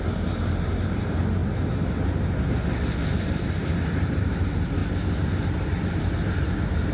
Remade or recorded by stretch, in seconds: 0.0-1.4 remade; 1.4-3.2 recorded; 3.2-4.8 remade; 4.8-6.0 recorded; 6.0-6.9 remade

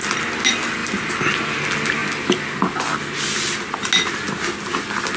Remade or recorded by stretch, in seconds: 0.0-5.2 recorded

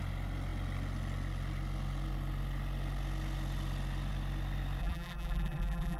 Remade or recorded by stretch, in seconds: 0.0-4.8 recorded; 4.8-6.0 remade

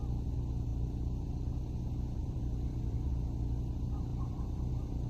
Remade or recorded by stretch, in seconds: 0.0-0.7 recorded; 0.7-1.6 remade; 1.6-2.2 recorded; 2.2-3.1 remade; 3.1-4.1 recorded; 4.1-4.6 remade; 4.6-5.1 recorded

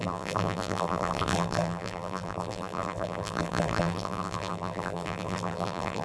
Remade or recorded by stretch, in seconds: 0.0-6.0 remade

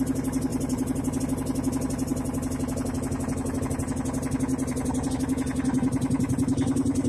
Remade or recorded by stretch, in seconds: 0.0-0.5 recorded; 0.5-1.2 remade; 1.2-4.5 recorded; 4.5-5.1 remade; 5.1-7.1 recorded